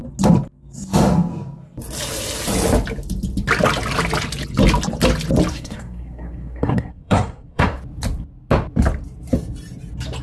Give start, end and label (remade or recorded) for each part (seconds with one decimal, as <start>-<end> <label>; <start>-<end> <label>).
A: 0.0-5.5 recorded; 5.5-7.8 remade; 7.8-10.2 recorded